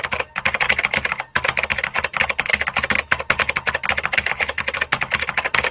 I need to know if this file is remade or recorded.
recorded